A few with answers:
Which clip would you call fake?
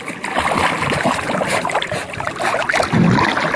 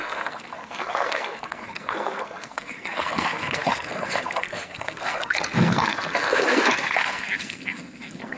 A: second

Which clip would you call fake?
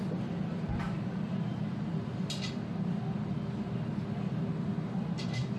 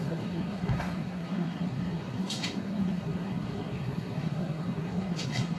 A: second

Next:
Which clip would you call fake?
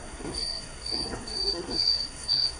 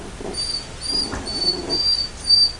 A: first